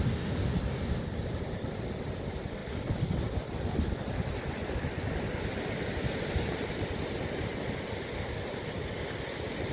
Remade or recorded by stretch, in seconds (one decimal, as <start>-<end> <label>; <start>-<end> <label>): 0.0-9.7 recorded